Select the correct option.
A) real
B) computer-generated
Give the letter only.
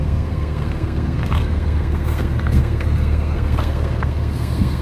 B